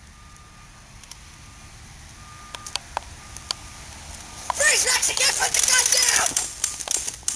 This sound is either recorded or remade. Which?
recorded